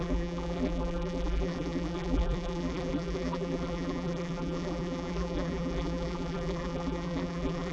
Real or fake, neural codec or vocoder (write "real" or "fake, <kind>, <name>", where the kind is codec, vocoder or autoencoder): fake, vocoder, BigVGAN v2